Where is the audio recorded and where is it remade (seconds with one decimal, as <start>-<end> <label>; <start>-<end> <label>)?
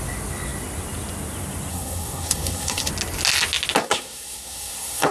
0.0-1.7 recorded; 1.7-2.9 remade; 2.9-3.8 recorded; 3.8-5.1 remade